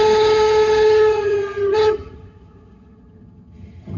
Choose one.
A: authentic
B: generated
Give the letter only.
B